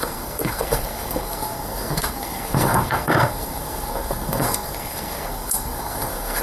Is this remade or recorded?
remade